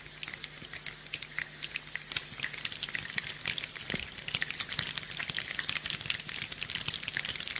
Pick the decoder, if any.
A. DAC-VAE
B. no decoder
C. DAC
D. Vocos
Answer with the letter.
B